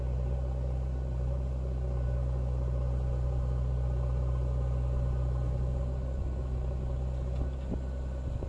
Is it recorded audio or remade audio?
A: recorded